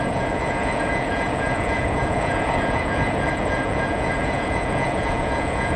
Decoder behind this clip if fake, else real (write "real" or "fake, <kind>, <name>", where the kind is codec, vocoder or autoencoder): fake, vocoder, Vocos